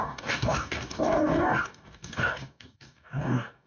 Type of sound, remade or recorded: remade